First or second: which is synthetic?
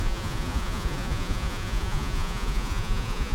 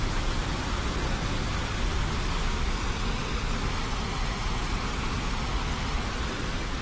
first